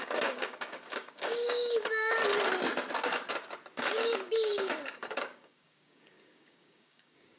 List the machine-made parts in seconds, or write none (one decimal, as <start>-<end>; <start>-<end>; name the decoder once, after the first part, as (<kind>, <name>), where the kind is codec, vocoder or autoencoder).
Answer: 0.0-2.2 (codec, DAC); 3.8-7.4